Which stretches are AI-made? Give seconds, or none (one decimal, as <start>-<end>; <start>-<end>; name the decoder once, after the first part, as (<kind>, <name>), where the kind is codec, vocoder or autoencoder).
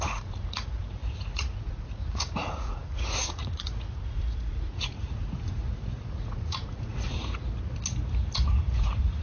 0.0-7.4 (vocoder, Vocos); 8.7-9.2